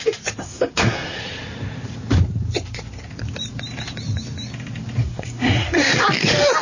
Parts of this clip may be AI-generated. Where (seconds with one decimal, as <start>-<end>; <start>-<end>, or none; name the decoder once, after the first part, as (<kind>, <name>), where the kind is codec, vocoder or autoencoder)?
0.4-1.2 (codec, SNAC); 5.0-6.0